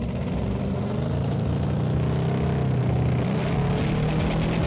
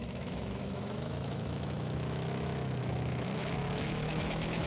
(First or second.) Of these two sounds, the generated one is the second